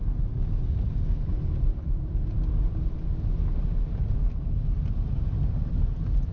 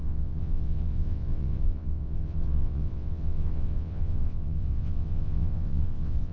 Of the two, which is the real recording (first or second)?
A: first